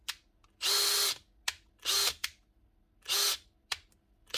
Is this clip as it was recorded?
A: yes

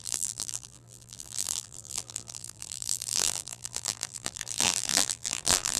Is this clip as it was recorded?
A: no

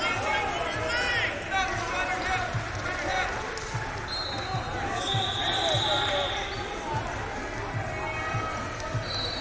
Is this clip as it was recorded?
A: yes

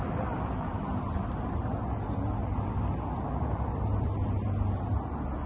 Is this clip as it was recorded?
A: yes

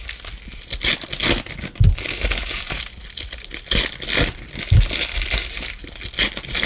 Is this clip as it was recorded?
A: yes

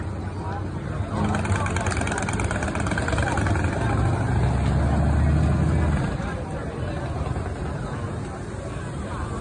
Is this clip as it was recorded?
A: yes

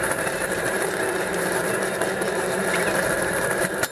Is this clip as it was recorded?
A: no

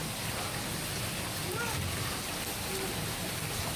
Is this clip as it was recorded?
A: yes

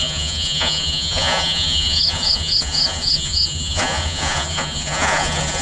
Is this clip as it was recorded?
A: no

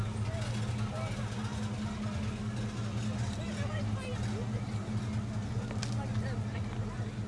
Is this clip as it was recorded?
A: yes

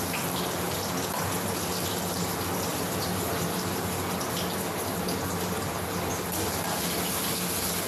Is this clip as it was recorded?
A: yes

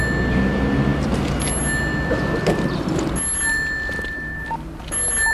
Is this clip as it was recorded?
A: yes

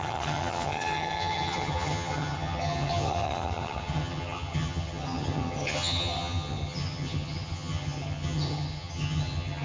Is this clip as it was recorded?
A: no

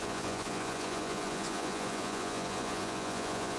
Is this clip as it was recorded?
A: no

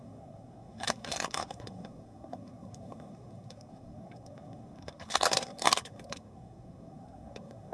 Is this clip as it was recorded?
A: no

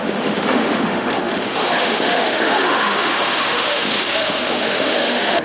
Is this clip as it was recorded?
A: no